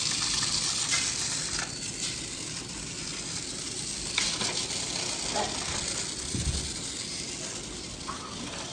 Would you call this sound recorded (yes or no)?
yes